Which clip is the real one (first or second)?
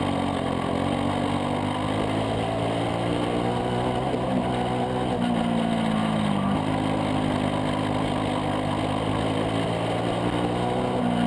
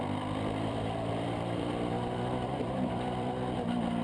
first